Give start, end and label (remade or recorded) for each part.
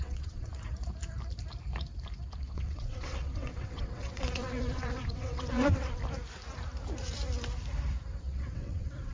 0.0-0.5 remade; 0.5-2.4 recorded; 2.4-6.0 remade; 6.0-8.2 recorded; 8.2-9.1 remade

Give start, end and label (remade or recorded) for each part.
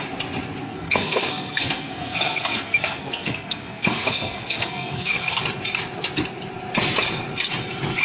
0.0-0.6 recorded; 0.6-5.4 remade; 5.4-8.0 recorded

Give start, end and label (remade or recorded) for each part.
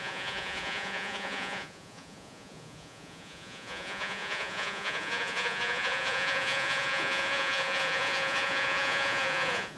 0.0-9.8 remade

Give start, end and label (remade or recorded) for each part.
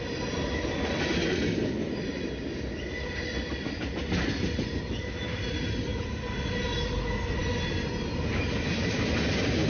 0.0-9.7 recorded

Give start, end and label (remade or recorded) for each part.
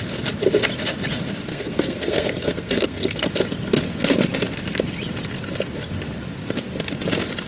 0.0-1.5 recorded; 1.5-3.3 remade; 3.3-7.5 recorded